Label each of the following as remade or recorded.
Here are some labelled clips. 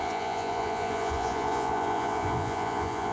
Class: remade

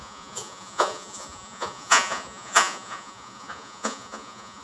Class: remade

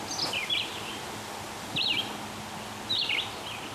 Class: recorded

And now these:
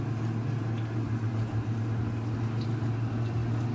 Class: recorded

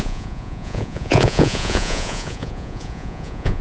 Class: remade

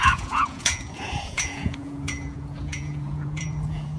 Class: remade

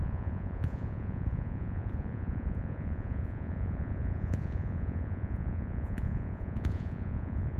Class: remade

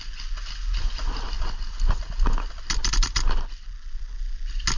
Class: recorded